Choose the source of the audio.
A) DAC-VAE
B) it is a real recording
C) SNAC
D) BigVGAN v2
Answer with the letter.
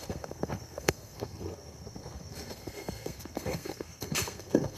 C